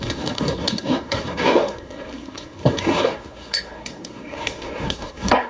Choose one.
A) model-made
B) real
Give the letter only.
A